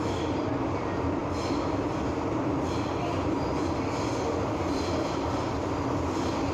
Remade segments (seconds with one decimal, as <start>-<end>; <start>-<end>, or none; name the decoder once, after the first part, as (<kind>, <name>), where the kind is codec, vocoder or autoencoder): none